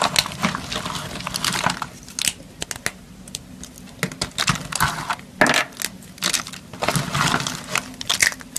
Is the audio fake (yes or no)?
no